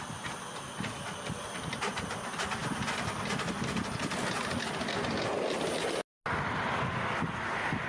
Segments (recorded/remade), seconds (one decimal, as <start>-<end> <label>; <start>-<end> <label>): 0.0-7.9 recorded